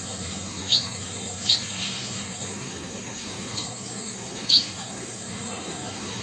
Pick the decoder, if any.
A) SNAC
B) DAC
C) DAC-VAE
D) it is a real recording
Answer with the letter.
A